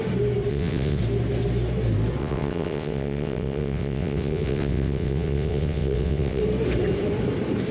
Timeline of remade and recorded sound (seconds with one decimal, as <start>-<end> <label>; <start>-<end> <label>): 0.0-0.5 recorded; 0.5-1.0 remade; 1.0-2.2 recorded; 2.2-6.4 remade; 6.4-7.7 recorded